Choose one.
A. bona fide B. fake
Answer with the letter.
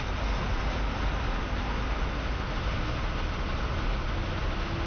A